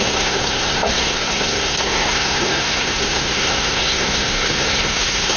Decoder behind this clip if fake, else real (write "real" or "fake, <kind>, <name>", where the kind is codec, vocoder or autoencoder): fake, codec, SNAC